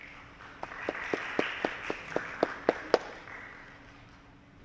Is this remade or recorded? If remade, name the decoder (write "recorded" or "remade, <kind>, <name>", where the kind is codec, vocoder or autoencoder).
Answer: recorded